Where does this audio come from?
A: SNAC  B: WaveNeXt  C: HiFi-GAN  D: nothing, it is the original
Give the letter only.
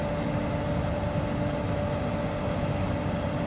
D